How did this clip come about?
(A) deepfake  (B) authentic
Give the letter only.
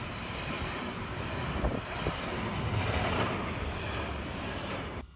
B